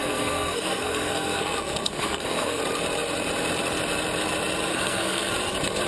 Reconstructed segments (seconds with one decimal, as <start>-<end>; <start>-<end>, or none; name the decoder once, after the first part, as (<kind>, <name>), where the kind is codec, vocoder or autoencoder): 0.0-2.6 (codec, SNAC); 4.7-5.3